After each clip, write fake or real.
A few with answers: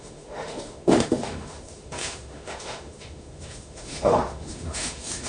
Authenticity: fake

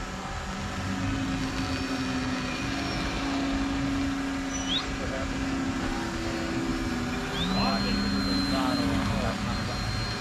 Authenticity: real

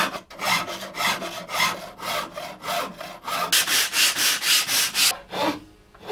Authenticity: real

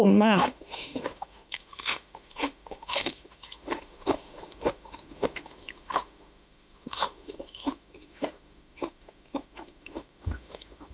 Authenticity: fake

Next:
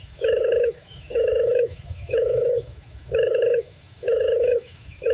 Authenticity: fake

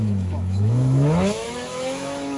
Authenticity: fake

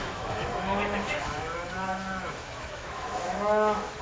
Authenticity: fake